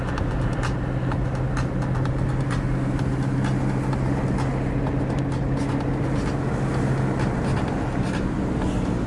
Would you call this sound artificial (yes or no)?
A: no